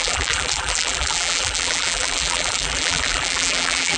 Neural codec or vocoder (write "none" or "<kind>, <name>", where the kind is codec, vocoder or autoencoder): vocoder, BigVGAN v2